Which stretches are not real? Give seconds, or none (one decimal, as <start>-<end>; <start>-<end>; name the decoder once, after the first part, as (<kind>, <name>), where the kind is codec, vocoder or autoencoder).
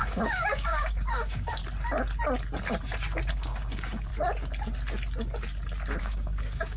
0.0-1.6 (codec, DAC); 3.3-4.1; 6.0-6.8